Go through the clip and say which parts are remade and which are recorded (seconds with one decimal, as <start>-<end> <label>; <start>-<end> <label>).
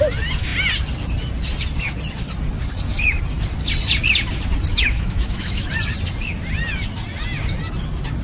0.0-4.7 recorded; 4.7-5.7 remade; 5.7-8.2 recorded